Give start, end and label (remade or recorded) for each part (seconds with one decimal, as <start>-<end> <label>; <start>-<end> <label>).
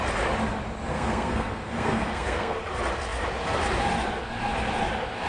0.0-0.9 recorded; 0.9-2.6 remade; 2.6-5.3 recorded